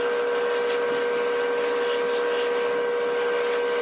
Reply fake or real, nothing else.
real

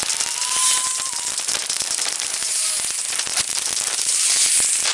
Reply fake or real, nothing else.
real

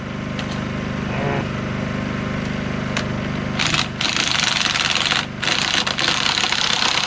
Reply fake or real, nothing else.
real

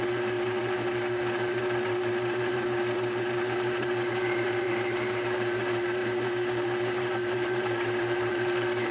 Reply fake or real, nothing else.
fake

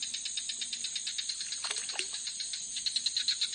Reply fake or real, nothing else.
real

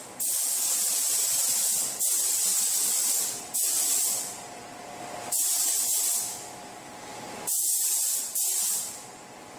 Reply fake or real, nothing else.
real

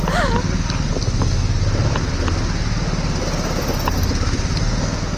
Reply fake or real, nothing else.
real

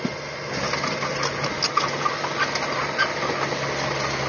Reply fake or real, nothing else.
real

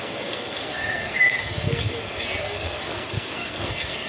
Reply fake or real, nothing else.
fake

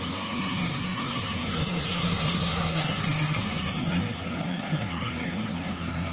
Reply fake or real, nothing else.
fake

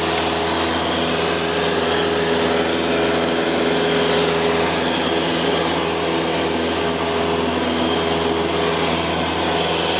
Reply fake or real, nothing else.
real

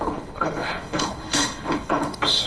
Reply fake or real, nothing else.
fake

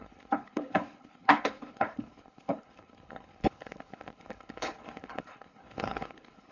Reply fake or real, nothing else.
fake